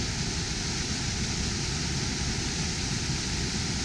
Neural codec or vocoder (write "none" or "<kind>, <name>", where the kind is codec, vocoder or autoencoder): none